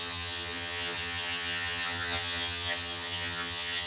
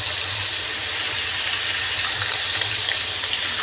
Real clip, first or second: second